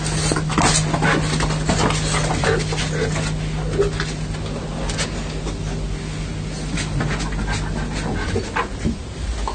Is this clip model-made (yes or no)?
no